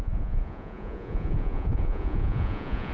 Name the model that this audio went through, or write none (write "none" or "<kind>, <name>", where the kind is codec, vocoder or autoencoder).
vocoder, Vocos